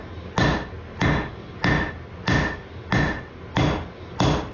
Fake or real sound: real